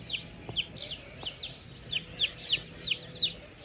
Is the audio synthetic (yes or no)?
no